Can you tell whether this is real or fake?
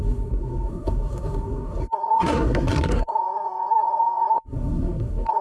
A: fake